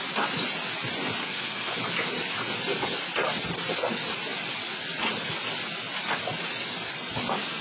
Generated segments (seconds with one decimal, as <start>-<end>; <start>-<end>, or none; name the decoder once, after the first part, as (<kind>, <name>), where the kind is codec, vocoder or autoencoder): 1.2-1.8 (codec, SNAC)